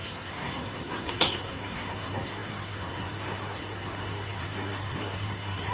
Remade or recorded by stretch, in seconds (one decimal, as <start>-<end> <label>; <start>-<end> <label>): 0.0-5.7 remade